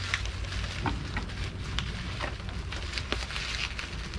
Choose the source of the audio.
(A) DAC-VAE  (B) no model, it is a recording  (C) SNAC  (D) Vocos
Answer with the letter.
B